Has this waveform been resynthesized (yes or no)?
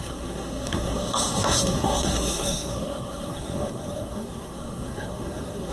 yes